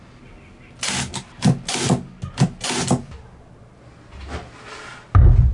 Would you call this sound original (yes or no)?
yes